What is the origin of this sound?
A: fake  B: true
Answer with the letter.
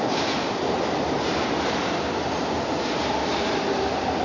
A